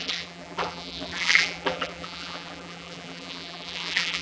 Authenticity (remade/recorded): remade